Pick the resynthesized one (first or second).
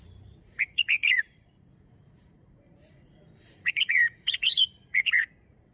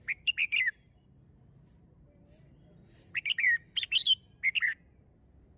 first